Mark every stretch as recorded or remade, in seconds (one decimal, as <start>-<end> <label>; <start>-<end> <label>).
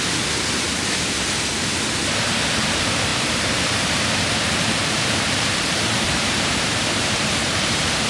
0.0-3.1 recorded; 3.1-8.1 remade